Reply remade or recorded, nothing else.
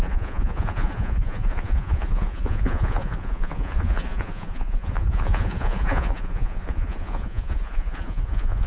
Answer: remade